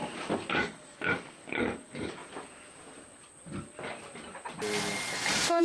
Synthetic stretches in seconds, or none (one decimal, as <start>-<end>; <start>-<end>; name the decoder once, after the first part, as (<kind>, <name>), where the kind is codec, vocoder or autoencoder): 0.5-2.2 (codec, DAC)